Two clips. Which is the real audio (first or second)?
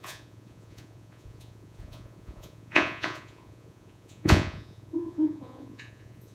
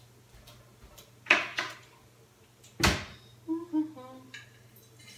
second